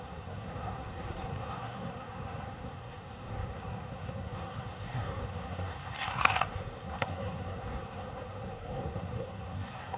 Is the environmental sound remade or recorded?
remade